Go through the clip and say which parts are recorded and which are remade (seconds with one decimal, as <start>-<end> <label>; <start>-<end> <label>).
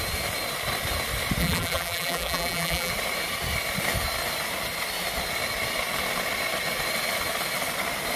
0.0-1.4 recorded; 1.4-2.9 remade; 2.9-8.2 recorded